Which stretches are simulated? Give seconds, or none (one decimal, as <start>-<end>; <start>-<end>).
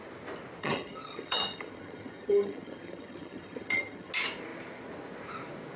0.6-4.1